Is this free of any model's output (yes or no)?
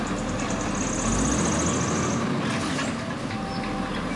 yes